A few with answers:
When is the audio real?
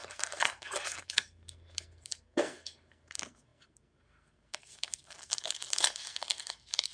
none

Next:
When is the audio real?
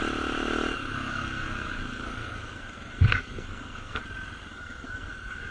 0.0-0.7; 4.0-4.5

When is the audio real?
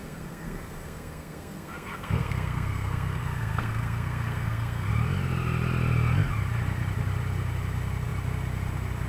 4.9-9.1